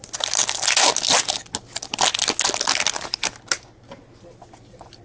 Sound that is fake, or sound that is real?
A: real